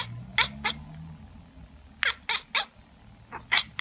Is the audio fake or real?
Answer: real